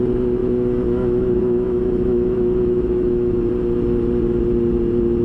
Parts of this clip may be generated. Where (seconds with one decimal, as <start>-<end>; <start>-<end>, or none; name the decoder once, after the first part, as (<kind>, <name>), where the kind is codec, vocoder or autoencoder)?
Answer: 0.4-3.5 (autoencoder, DAC-VAE)